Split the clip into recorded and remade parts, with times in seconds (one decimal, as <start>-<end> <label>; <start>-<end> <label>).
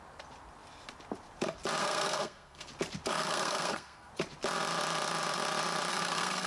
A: 0.0-1.8 recorded; 1.8-2.7 remade; 2.7-3.1 recorded; 3.1-4.1 remade; 4.1-5.9 recorded; 5.9-6.5 remade